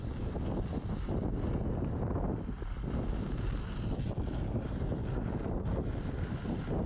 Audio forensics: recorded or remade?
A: recorded